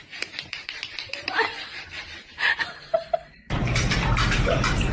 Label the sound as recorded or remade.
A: remade